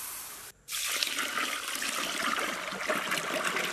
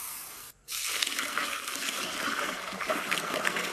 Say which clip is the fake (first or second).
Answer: second